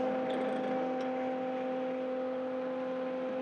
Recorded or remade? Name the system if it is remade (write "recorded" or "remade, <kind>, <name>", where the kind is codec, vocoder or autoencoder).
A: recorded